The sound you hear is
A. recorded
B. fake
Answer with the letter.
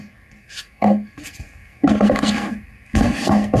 B